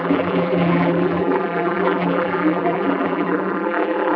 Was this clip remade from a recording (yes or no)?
yes